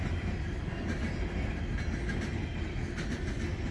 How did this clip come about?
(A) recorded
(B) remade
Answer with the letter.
A